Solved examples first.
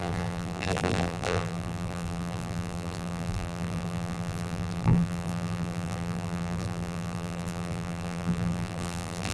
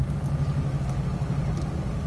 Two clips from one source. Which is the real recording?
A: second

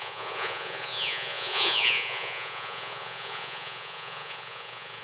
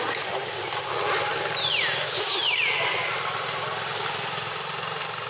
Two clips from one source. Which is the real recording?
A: second